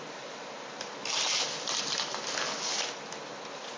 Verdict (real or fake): real